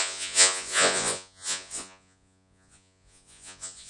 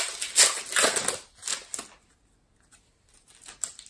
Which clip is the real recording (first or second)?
second